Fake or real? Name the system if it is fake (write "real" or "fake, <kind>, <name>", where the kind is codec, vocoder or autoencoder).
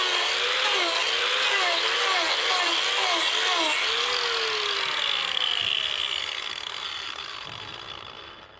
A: real